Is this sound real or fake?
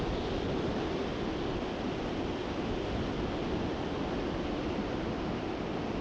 real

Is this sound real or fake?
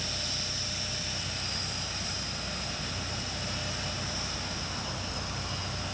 real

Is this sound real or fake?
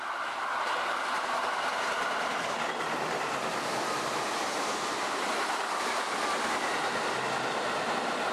real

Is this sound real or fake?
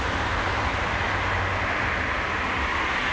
real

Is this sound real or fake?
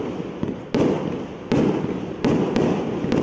real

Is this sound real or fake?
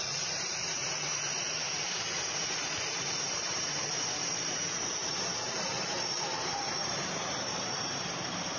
fake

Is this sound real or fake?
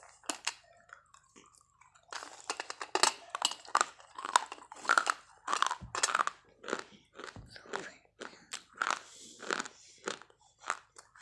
real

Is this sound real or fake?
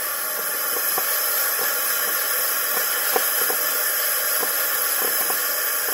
real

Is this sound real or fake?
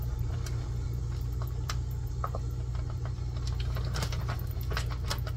real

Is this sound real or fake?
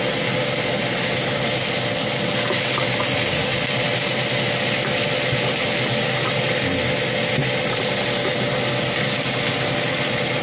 real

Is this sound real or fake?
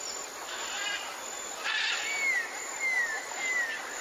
real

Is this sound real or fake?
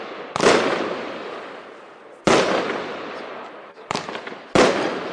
fake